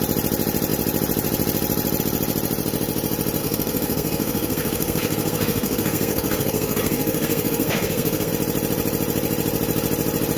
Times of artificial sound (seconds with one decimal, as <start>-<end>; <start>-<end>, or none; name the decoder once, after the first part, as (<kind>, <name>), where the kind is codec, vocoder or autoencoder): 3.4-8.3 (codec, SNAC)